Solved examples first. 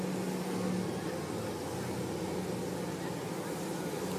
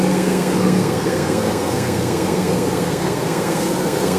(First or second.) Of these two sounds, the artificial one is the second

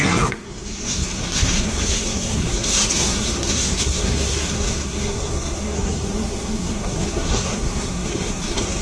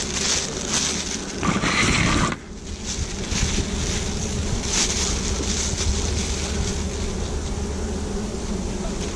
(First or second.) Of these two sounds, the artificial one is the first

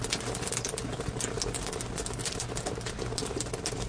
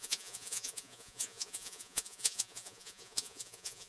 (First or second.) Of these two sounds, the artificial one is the second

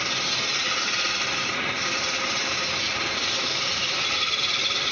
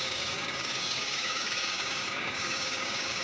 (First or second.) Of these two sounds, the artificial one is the second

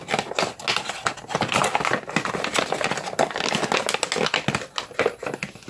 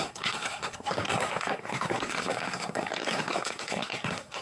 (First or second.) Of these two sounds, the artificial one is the second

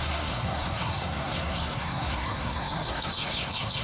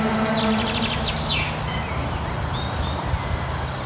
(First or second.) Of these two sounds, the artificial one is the first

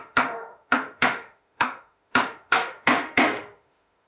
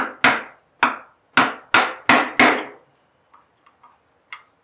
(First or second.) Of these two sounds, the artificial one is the first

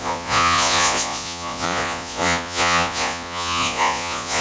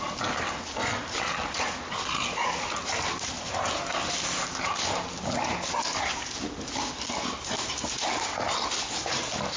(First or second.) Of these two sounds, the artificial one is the first